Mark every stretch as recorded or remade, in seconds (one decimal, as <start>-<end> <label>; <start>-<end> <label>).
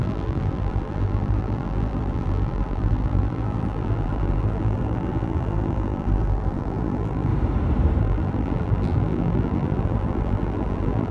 0.0-7.3 remade; 7.3-8.0 recorded; 8.0-11.1 remade